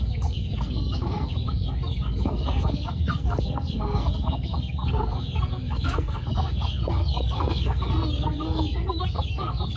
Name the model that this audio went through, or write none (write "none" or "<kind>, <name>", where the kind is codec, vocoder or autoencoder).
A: codec, SNAC